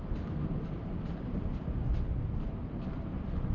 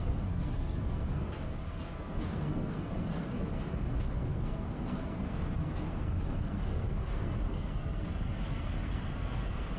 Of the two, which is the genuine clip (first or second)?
first